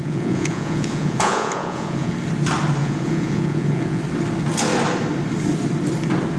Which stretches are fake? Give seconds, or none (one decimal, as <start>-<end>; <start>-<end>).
0.0-2.1; 2.8-4.0